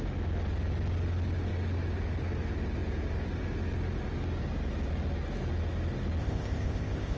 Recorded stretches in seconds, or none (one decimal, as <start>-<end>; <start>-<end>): 0.0-6.2